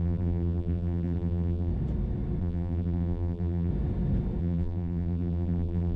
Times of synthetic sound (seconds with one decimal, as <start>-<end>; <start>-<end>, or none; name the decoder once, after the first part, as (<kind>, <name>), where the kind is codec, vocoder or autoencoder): 0.0-1.7 (vocoder, BigVGAN v2); 2.4-3.7; 4.4-6.0